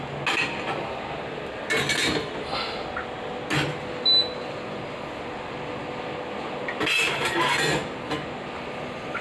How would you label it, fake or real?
real